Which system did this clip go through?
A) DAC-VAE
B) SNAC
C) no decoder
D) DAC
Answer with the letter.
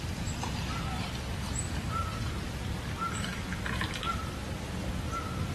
C